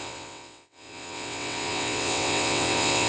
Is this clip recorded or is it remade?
remade